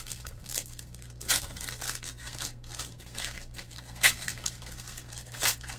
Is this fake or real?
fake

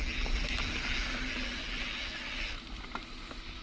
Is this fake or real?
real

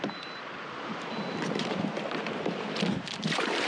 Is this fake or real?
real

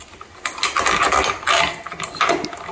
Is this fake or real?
real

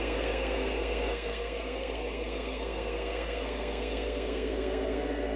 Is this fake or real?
fake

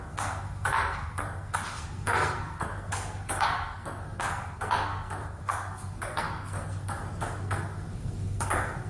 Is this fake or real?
fake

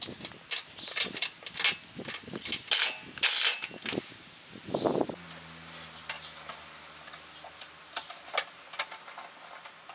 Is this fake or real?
real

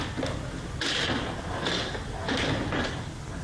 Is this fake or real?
real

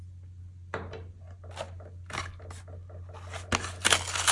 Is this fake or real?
real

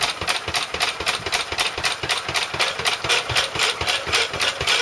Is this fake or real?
real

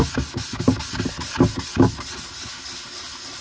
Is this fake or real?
real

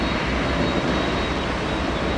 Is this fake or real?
real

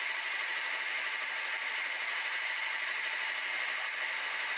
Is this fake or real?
real